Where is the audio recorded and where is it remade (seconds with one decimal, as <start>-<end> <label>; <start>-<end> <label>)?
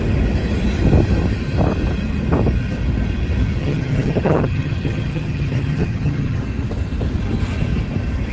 0.0-3.6 recorded; 3.6-6.4 remade; 6.4-8.3 recorded